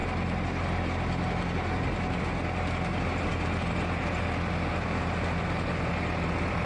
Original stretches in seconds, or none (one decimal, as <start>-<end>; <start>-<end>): 0.0-6.7